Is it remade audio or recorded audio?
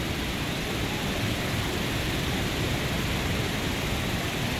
remade